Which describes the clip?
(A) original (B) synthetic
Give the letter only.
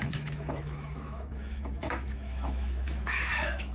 B